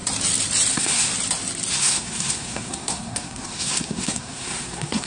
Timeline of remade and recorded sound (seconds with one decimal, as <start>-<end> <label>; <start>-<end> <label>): 0.0-0.7 recorded; 0.7-1.1 remade; 1.1-1.7 recorded; 1.7-5.1 remade